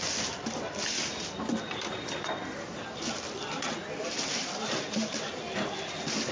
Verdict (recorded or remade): recorded